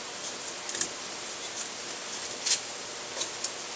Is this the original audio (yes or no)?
yes